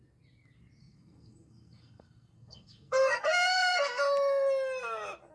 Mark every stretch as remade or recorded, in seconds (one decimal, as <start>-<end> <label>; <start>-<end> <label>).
0.0-0.8 recorded; 0.8-4.0 remade; 4.0-5.3 recorded